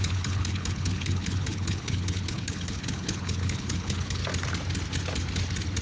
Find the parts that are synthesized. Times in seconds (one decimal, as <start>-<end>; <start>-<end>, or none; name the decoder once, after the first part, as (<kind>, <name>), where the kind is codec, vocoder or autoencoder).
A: 0.0-4.2 (codec, HILCodec)